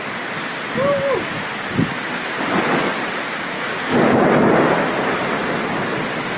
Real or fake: real